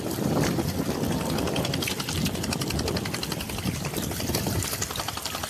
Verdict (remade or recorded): remade